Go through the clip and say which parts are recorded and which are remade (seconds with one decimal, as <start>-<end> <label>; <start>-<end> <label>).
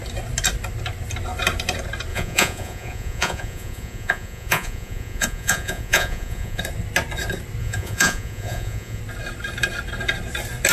0.0-2.1 recorded; 2.1-6.6 remade; 6.6-7.6 recorded; 7.6-9.0 remade; 9.0-10.7 recorded